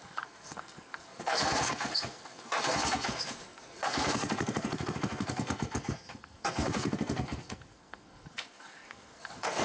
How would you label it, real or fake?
fake